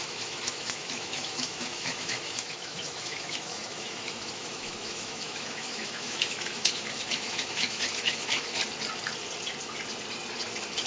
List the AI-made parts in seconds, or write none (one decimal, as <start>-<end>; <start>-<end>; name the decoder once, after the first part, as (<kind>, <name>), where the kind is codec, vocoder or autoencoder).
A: 0.0-8.6 (autoencoder, DAC-VAE)